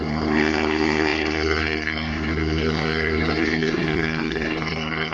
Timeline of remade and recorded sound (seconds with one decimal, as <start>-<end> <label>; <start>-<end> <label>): 0.0-5.1 remade